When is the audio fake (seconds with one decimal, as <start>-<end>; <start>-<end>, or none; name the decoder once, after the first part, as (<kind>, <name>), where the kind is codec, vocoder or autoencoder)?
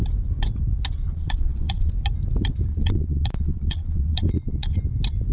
1.0-1.9 (vocoder, Vocos); 2.7-4.8